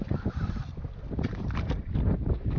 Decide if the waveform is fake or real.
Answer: fake